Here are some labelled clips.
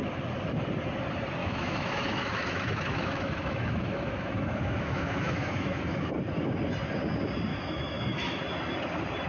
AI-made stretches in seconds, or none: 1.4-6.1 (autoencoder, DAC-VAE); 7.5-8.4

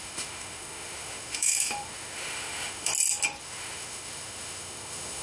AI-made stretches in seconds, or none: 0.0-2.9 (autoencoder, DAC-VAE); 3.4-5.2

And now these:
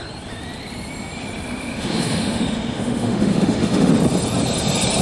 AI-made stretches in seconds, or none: 1.6-3.9 (autoencoder, DAC-VAE)

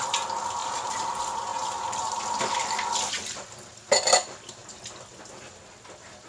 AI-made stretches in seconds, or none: none

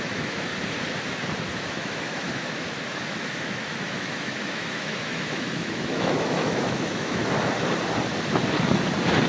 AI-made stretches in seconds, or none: 0.0-0.5 (autoencoder, DAC-VAE); 1.5-7.2

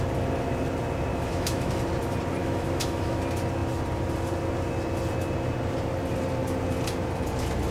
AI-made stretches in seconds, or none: 1.1-1.8 (autoencoder, DAC-VAE); 2.4-3.2

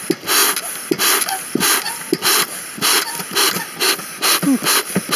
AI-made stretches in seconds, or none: none